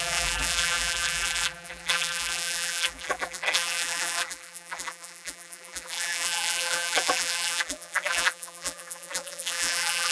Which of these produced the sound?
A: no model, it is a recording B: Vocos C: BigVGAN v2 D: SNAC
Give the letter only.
C